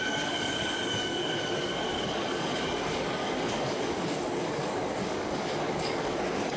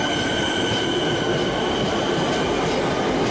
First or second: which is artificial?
first